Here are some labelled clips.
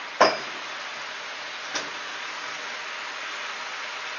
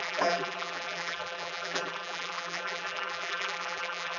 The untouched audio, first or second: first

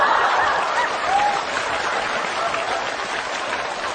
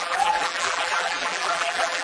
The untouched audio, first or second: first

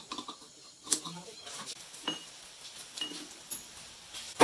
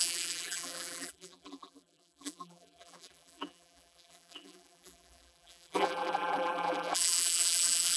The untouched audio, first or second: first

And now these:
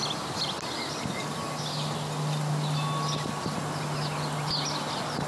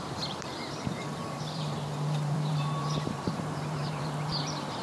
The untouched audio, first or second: first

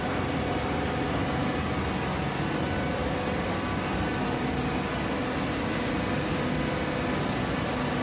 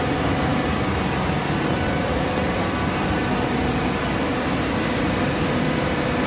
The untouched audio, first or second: first